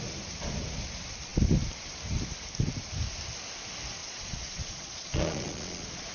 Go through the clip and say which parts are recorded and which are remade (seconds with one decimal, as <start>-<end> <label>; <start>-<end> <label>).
0.0-4.0 recorded; 4.0-6.1 remade